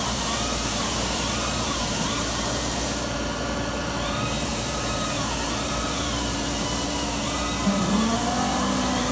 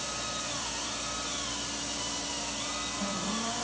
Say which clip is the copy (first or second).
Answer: first